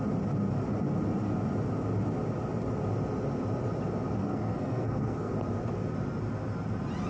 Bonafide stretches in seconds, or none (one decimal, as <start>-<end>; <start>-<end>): 0.0-4.2; 5.3-7.1